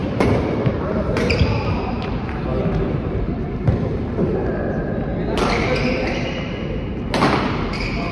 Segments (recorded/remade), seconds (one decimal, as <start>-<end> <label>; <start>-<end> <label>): 0.0-2.1 remade; 2.1-8.1 recorded